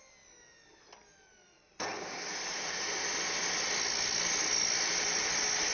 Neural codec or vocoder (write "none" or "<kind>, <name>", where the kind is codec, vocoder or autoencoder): none